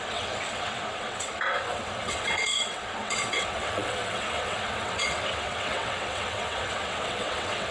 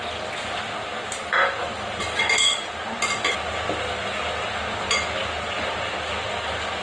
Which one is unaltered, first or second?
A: second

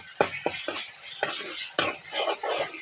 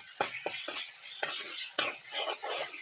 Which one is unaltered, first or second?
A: first